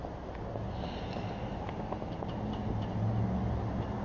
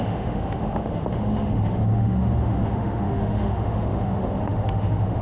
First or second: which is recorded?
first